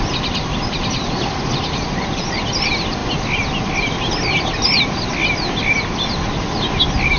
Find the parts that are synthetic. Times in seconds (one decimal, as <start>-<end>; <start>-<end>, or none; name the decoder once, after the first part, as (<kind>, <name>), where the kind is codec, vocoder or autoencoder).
none